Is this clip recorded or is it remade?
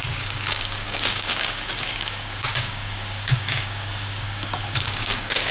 remade